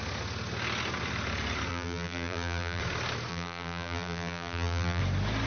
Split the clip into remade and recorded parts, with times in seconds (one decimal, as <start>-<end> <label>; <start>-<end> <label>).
0.0-1.7 recorded; 1.7-2.8 remade; 2.8-3.3 recorded; 3.3-5.0 remade; 5.0-5.5 recorded